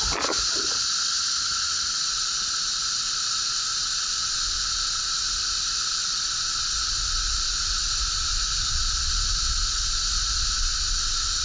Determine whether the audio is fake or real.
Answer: real